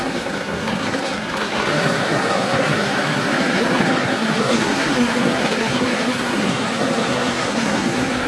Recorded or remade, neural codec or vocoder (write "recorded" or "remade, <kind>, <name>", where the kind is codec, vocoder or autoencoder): remade, codec, SNAC